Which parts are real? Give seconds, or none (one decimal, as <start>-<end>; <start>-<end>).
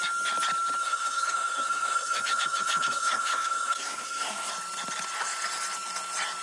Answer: 0.0-0.8; 4.5-6.4